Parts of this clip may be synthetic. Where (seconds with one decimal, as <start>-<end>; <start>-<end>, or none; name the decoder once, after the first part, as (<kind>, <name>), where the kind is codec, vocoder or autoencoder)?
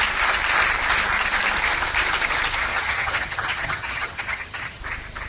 2.7-4.8 (vocoder, HiFi-GAN)